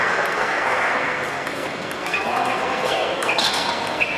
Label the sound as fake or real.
fake